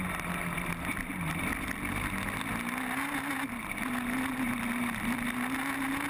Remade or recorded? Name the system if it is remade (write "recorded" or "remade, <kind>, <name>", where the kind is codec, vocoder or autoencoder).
recorded